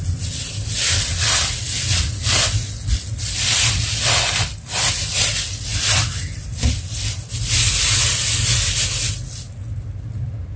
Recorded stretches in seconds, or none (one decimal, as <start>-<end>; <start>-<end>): 0.0-10.6